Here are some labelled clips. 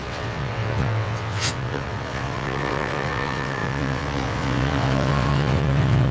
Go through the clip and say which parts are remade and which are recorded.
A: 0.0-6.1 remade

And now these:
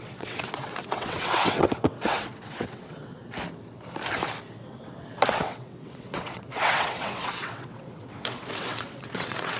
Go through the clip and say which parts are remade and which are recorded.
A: 0.0-3.2 remade; 3.2-4.6 recorded; 4.6-9.6 remade

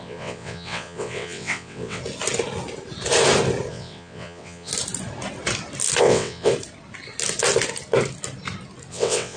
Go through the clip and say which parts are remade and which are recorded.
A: 0.0-2.0 remade; 2.0-3.7 recorded; 3.7-4.7 remade; 4.7-6.0 recorded; 6.0-6.5 remade; 6.5-8.9 recorded; 8.9-9.4 remade

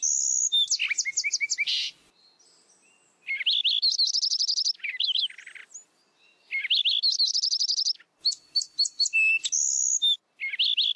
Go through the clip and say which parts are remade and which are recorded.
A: 0.0-11.0 recorded

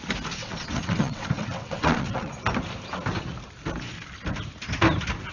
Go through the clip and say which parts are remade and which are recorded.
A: 0.0-0.4 recorded; 0.4-2.3 remade; 2.3-5.3 recorded

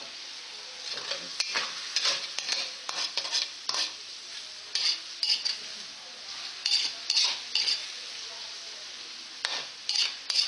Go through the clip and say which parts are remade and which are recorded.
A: 0.0-10.5 recorded

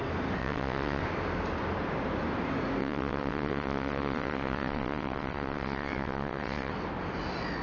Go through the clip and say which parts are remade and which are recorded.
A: 0.0-0.4 recorded; 0.4-1.0 remade; 1.0-2.8 recorded; 2.8-6.7 remade; 6.7-7.6 recorded

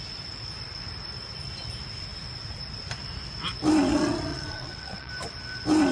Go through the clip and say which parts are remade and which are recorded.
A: 0.0-4.3 recorded; 4.3-5.1 remade; 5.1-5.9 recorded